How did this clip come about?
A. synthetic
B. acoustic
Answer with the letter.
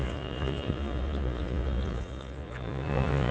A